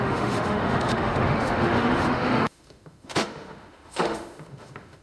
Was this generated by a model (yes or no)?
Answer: yes